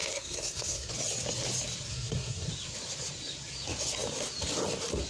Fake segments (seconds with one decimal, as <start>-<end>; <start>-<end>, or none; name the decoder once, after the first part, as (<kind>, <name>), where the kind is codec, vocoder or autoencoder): 0.0-0.9 (codec, SNAC); 1.9-2.5